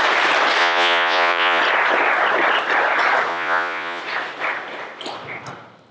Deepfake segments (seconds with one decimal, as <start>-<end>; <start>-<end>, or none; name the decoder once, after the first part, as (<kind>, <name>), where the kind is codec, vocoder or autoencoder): 0.6-1.6 (vocoder, Vocos); 3.3-4.0